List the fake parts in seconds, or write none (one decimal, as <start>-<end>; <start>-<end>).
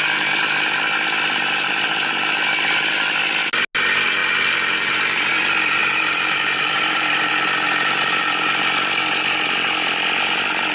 4.2-5.3; 5.8-7.3